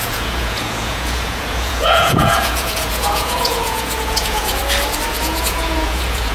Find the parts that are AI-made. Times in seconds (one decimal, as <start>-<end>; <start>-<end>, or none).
0.0-4.6; 5.2-6.3